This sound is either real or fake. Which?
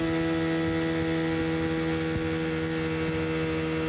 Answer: real